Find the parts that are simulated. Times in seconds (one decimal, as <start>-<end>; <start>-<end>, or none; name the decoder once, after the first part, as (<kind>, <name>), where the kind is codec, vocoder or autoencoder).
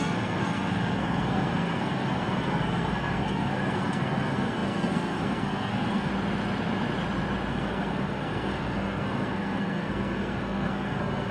0.0-6.1 (codec, SNAC); 7.5-11.3